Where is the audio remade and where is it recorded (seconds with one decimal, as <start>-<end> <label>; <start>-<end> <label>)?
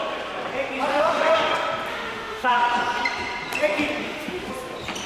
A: 0.0-0.9 recorded; 0.9-1.5 remade; 1.5-1.9 recorded; 1.9-2.6 remade; 2.6-4.0 recorded; 4.0-4.5 remade; 4.5-5.1 recorded